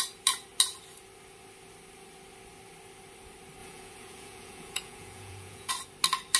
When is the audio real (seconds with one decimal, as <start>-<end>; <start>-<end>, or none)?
0.0-3.6; 5.7-6.4